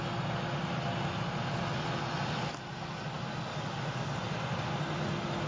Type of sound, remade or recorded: recorded